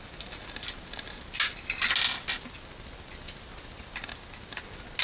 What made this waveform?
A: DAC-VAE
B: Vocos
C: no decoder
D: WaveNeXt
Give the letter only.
C